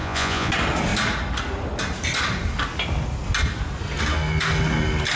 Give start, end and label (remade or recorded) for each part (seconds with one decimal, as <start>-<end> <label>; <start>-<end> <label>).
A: 0.0-0.5 remade; 0.5-5.2 recorded